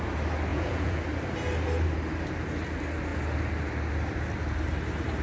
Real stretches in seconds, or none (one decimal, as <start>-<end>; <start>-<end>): 0.0-0.5; 1.0-5.2